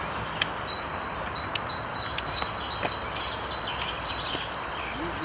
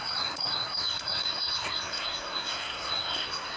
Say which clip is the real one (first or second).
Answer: first